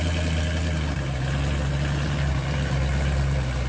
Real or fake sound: real